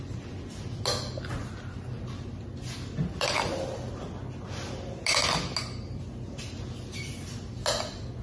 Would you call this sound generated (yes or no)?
no